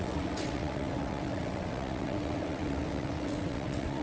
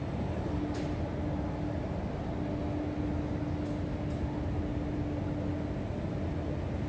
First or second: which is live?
second